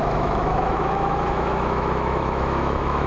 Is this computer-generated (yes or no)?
yes